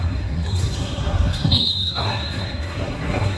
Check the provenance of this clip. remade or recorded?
remade